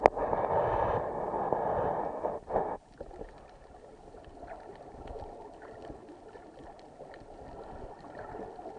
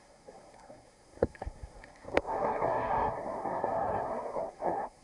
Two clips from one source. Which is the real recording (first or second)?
first